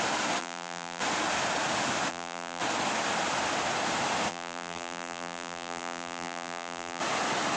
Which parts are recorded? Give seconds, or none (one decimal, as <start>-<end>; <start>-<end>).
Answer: 0.0-0.4; 1.0-2.1; 2.6-4.3; 7.0-7.6